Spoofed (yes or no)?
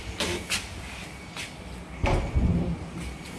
no